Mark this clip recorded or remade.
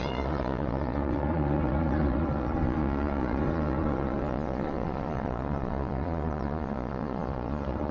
remade